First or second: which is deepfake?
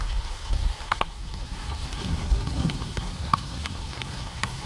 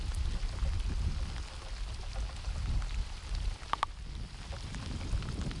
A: first